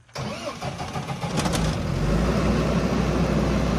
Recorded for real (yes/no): yes